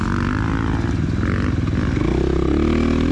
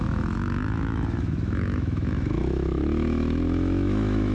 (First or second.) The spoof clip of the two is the second